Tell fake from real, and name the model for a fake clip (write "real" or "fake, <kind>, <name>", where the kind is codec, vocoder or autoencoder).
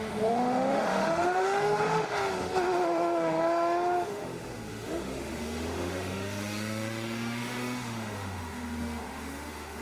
fake, autoencoder, DAC-VAE